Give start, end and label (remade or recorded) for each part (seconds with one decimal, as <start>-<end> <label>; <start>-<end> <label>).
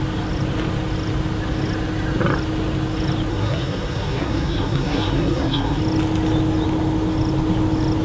0.0-3.3 recorded; 3.3-5.8 remade; 5.8-8.0 recorded